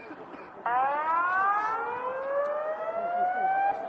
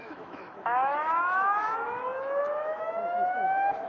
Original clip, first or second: first